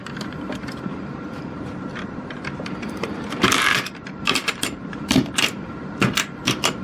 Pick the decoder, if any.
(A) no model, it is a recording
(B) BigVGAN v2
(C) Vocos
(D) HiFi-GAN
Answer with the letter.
B